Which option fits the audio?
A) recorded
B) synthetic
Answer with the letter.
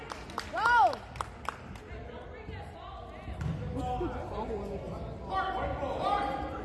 A